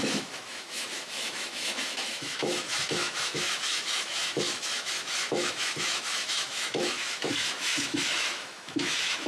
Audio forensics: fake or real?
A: fake